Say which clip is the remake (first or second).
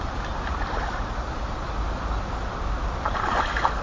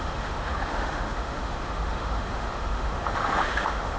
second